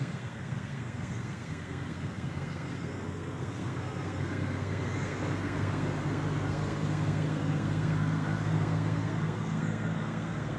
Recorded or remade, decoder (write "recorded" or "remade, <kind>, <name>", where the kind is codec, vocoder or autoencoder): remade, codec, SNAC